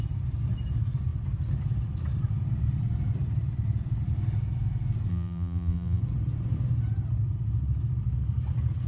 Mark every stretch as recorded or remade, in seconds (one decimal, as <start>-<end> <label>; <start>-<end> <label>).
0.0-5.1 recorded; 5.1-6.0 remade; 6.0-8.9 recorded